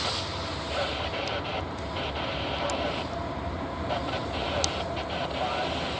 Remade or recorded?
recorded